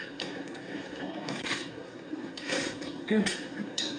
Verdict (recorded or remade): remade